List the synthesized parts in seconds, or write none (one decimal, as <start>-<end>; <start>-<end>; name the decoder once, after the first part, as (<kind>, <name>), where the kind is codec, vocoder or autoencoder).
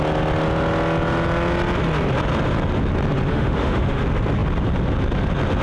3.3-4.0 (autoencoder, DAC-VAE)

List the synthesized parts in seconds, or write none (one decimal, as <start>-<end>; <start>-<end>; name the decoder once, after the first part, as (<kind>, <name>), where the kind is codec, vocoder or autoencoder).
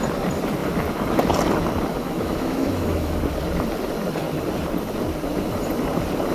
1.9-3.2 (autoencoder, DAC-VAE)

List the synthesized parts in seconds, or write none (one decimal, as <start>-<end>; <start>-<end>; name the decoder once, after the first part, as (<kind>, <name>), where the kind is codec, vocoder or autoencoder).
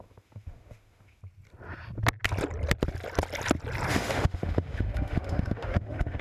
0.0-1.2 (autoencoder, DAC-VAE); 3.9-6.2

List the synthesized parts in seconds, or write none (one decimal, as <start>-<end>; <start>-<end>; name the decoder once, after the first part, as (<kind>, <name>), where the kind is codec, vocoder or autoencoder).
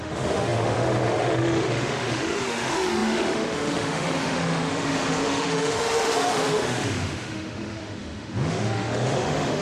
0.0-9.6 (autoencoder, DAC-VAE)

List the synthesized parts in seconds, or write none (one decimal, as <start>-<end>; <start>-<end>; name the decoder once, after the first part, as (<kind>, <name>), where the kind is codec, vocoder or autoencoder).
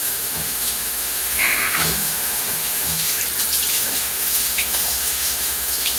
0.0-3.2 (autoencoder, DAC-VAE); 3.7-6.0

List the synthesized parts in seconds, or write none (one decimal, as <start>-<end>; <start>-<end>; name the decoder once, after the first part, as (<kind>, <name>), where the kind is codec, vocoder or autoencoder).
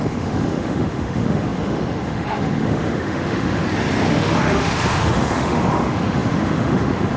0.0-3.6 (autoencoder, DAC-VAE); 4.1-7.2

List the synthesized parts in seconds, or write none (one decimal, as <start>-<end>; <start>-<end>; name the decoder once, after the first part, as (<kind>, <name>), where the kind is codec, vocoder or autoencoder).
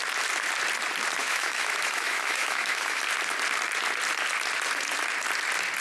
1.2-3.0 (autoencoder, DAC-VAE)